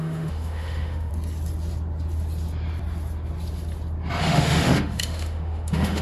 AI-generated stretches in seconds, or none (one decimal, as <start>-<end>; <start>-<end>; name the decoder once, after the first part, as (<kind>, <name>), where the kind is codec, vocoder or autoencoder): 0.0-1.1 (autoencoder, DAC-VAE); 4.2-6.0